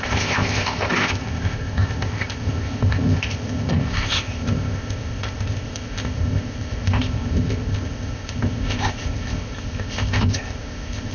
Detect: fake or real fake